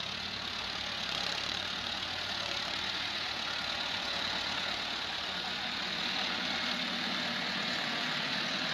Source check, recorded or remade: remade